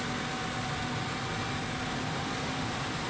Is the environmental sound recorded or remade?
recorded